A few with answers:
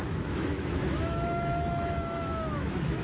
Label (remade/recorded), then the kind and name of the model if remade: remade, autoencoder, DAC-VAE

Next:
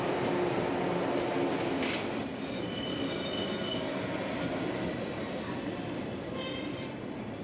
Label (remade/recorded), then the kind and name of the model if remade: recorded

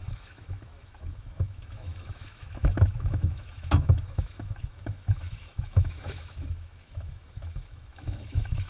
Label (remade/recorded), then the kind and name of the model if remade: remade, autoencoder, DAC-VAE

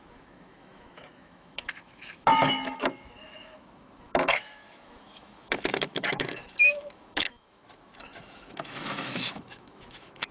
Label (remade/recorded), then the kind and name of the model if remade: remade, autoencoder, DAC-VAE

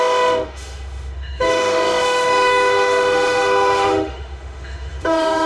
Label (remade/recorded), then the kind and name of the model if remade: remade, autoencoder, DAC-VAE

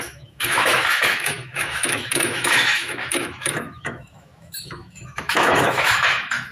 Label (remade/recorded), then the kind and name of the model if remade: remade, autoencoder, DAC-VAE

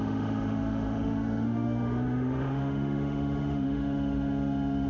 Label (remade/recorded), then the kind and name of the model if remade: remade, autoencoder, DAC-VAE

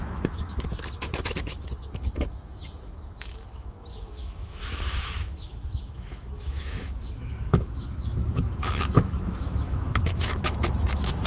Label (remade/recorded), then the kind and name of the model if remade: remade, autoencoder, DAC-VAE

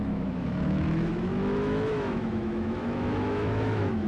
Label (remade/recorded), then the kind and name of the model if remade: remade, autoencoder, DAC-VAE